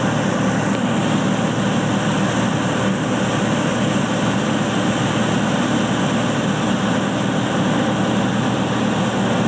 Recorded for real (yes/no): yes